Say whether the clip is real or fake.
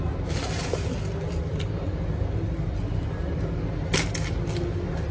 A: real